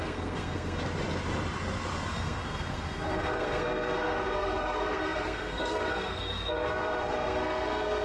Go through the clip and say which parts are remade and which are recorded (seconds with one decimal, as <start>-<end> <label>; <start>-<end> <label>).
0.0-0.8 remade; 0.8-2.1 recorded; 2.1-8.0 remade